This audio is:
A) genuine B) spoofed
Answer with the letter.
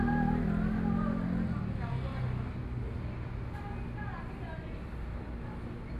A